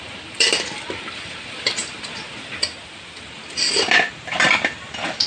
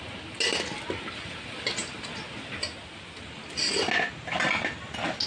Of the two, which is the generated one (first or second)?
first